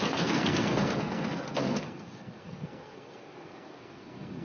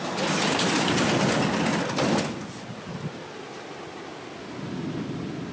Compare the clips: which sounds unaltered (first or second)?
second